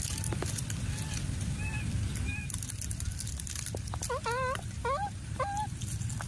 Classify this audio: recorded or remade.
recorded